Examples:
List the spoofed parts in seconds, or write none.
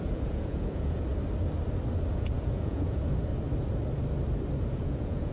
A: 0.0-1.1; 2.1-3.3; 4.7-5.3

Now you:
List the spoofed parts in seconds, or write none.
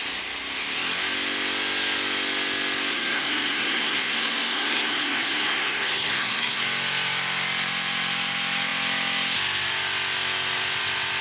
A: 2.9-6.6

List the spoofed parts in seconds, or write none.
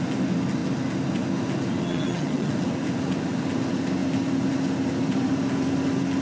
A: 1.8-2.5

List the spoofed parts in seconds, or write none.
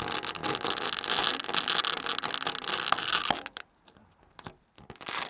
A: none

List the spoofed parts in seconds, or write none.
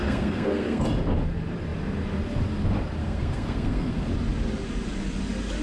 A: 0.0-0.8; 3.0-4.1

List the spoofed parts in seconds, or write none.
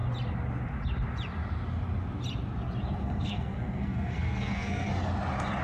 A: 3.0-4.9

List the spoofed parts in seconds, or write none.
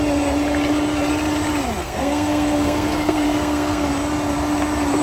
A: 1.8-3.9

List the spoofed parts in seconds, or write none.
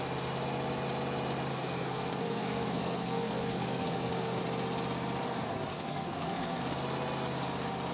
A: 1.5-4.4; 5.7-6.6